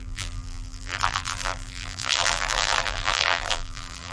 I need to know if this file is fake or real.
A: fake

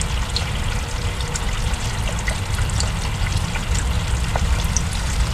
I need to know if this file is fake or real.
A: real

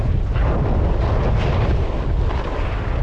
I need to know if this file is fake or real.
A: real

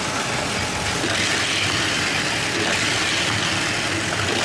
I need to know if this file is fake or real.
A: real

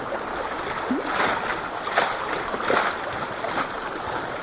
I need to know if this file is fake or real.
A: real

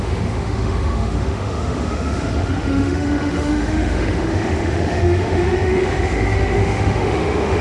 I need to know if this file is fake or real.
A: fake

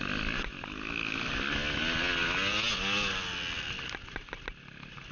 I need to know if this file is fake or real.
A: real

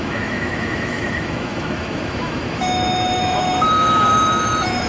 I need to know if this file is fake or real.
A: fake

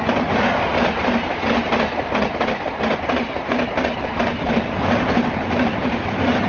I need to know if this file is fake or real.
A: fake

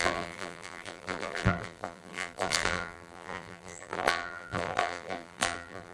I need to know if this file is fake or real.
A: fake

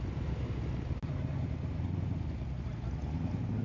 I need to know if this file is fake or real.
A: real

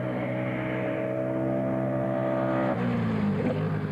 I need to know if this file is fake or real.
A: real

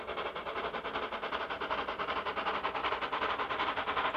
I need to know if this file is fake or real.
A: real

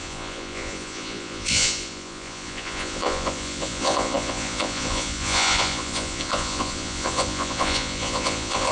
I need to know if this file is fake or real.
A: fake